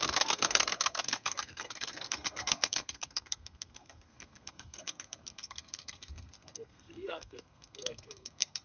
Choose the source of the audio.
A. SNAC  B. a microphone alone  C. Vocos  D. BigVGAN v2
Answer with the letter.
A